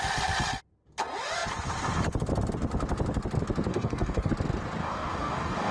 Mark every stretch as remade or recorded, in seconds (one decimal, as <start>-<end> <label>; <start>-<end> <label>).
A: 0.0-3.7 recorded; 3.7-4.3 remade; 4.3-4.8 recorded; 4.8-5.7 remade